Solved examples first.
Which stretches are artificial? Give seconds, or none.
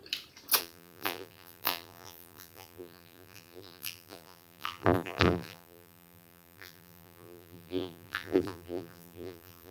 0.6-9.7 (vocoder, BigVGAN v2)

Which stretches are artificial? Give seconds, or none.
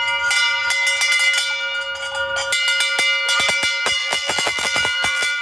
4.0-5.4 (vocoder, BigVGAN v2)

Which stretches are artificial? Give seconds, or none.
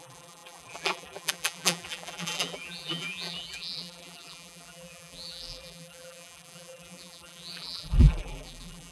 0.0-8.9 (vocoder, BigVGAN v2)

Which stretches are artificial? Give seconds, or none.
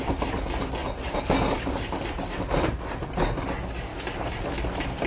0.8-2.7 (vocoder, BigVGAN v2); 3.9-4.6